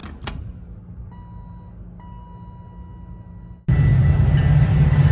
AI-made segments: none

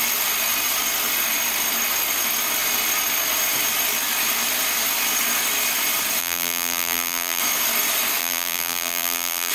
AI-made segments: 6.2-7.4 (vocoder, BigVGAN v2); 8.2-9.5

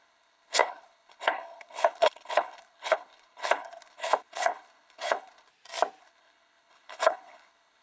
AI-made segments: 0.0-5.5 (codec, HILCodec); 6.0-7.8

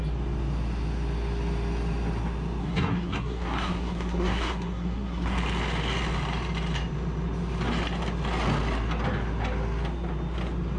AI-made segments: 2.6-5.4 (codec, SNAC)

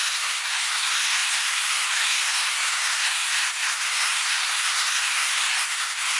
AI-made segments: 0.0-6.2 (codec, SNAC)